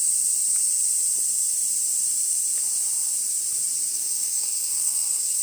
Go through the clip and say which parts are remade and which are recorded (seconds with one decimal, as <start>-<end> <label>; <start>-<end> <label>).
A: 0.0-3.9 recorded; 3.9-5.4 remade